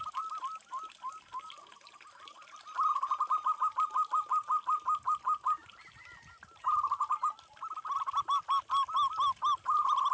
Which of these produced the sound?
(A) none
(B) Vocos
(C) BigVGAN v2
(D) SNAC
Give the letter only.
A